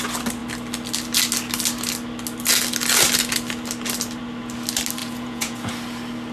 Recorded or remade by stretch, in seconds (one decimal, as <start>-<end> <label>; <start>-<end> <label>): 0.0-5.0 recorded; 5.0-5.7 remade; 5.7-6.3 recorded